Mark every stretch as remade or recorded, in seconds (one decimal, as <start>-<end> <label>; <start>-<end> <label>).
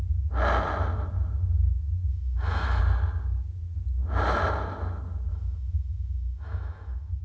0.0-2.1 recorded; 2.1-2.8 remade; 2.8-5.3 recorded; 5.3-7.2 remade